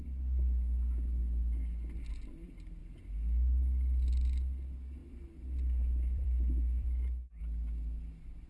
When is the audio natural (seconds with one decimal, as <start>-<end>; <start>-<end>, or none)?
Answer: 0.0-5.0; 7.4-8.5

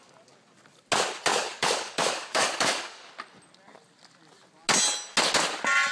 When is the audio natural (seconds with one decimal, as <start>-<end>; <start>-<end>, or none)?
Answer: 0.0-1.3; 3.1-5.9

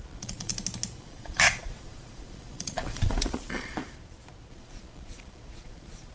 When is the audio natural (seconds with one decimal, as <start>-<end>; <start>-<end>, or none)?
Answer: 0.5-1.0; 3.8-4.5

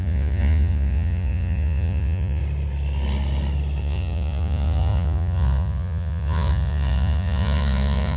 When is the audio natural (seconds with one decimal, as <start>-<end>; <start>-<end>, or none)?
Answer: 2.4-3.8

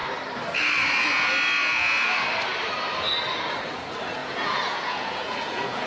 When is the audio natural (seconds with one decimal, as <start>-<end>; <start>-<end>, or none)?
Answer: 0.0-4.2

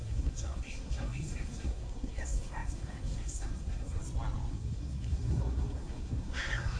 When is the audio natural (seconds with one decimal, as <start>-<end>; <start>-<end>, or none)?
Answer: 4.0-4.5